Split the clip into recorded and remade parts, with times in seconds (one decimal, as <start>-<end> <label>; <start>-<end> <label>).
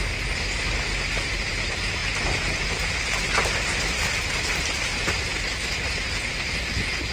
0.0-7.1 recorded